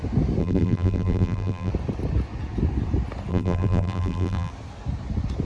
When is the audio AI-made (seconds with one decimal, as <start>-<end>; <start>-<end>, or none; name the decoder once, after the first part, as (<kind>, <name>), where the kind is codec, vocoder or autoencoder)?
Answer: 0.4-1.7 (vocoder, BigVGAN v2); 3.3-4.5